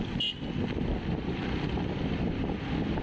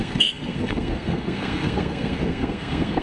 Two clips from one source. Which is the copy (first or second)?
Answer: second